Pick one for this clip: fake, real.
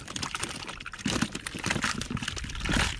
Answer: real